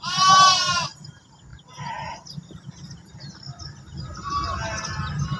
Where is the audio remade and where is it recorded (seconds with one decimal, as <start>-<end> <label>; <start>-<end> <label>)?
0.0-5.4 recorded

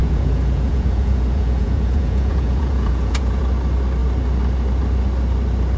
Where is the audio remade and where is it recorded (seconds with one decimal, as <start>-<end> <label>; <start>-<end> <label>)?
0.0-3.4 remade; 3.4-5.8 recorded

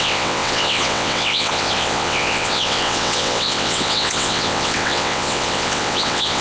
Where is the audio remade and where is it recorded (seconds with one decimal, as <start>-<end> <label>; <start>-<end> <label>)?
0.0-6.4 remade

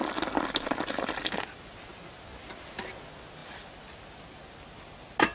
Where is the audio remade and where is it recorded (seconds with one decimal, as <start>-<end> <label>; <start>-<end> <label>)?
0.0-5.3 recorded

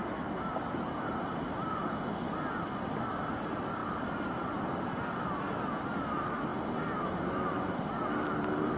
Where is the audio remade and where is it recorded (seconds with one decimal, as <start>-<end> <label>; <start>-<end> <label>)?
0.0-1.8 remade; 1.8-3.1 recorded; 3.1-8.8 remade

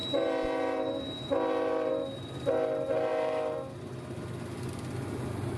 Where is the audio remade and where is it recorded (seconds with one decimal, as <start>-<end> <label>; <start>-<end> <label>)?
0.0-5.6 recorded